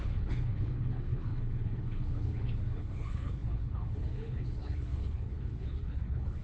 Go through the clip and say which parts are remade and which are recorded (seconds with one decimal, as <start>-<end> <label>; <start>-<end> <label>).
0.0-6.4 remade